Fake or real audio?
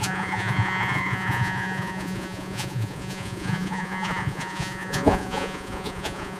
fake